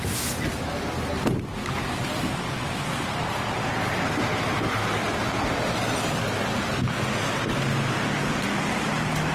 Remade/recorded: recorded